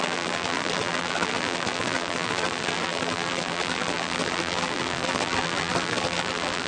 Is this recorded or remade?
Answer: remade